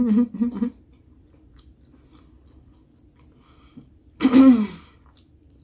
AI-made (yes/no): no